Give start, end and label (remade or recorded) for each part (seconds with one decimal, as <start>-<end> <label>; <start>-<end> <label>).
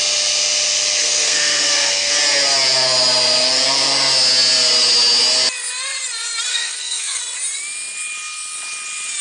0.0-1.0 recorded; 1.0-2.1 remade; 2.1-6.5 recorded; 6.5-7.2 remade; 7.2-9.2 recorded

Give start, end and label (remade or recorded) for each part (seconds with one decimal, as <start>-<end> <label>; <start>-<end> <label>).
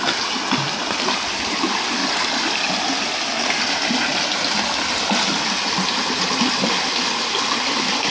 0.0-8.1 recorded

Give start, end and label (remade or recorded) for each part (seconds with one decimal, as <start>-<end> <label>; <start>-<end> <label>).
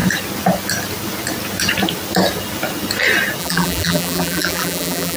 0.0-3.4 recorded; 3.4-5.2 remade